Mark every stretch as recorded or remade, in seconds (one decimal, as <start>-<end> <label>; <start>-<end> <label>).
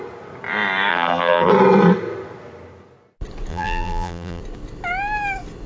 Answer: 0.0-0.9 recorded; 0.9-1.5 remade; 1.5-3.5 recorded; 3.5-4.4 remade; 4.4-5.7 recorded